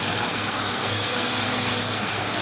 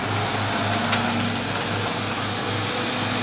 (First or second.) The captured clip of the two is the second